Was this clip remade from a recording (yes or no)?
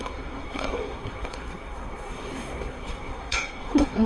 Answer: yes